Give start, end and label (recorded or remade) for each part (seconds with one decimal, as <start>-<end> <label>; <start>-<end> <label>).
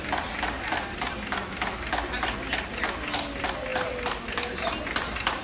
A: 0.0-5.4 recorded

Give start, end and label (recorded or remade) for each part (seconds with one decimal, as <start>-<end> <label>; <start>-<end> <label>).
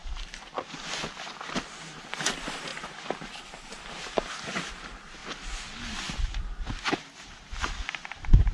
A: 0.0-1.7 recorded; 1.7-5.2 remade; 5.2-6.9 recorded; 6.9-8.5 remade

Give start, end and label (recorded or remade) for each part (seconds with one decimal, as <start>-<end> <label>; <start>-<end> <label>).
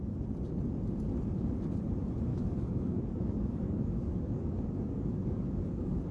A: 0.0-2.3 recorded; 2.3-6.1 remade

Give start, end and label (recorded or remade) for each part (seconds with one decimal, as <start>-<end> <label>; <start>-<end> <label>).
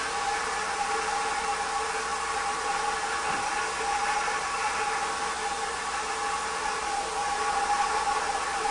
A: 0.0-8.7 recorded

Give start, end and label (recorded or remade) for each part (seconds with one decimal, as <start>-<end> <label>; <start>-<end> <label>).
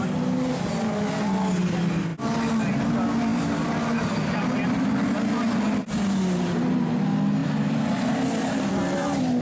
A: 0.0-3.3 recorded; 3.3-3.8 remade; 3.8-7.4 recorded; 7.4-8.7 remade; 8.7-9.4 recorded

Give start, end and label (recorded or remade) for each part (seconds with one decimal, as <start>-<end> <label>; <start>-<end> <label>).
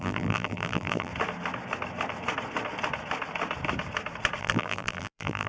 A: 0.0-1.1 remade; 1.1-4.4 recorded; 4.4-5.5 remade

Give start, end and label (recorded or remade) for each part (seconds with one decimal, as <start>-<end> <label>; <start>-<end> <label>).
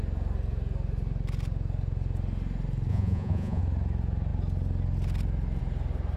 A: 0.0-2.9 recorded; 2.9-3.6 remade; 3.6-6.2 recorded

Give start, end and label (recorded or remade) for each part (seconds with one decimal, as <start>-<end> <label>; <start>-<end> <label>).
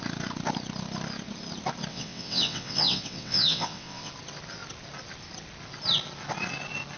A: 0.0-1.9 recorded; 1.9-4.1 remade; 4.1-7.0 recorded